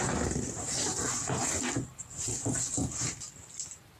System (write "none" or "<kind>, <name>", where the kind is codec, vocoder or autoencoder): none